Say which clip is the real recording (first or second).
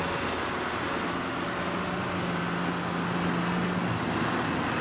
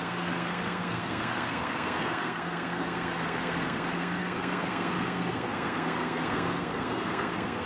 first